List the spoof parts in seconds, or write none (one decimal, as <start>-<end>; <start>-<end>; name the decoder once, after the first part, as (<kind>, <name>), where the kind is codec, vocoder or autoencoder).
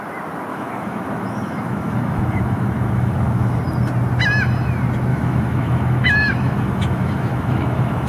0.5-3.6 (autoencoder, DAC-VAE); 5.1-8.1